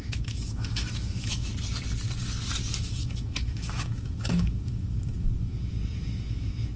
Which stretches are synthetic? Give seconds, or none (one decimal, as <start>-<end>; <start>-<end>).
0.0-1.5; 2.8-6.8

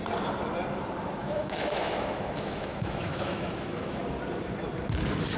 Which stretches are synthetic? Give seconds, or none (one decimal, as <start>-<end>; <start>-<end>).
1.2-4.0

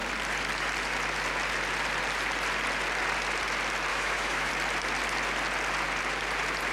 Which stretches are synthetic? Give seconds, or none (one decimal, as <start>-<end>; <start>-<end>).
3.9-4.5

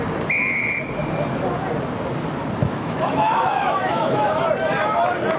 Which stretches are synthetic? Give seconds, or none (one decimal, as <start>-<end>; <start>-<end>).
2.6-4.4

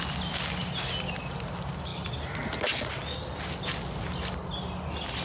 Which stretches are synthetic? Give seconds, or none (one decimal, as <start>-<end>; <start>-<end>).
none

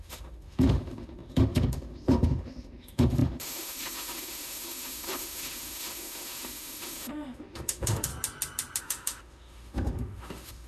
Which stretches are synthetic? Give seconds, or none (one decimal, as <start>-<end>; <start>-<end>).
0.0-8.1; 8.8-10.7